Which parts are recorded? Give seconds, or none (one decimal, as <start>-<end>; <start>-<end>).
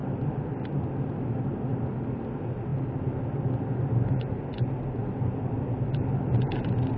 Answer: 0.8-7.0